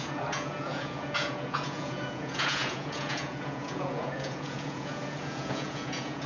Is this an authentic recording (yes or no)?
no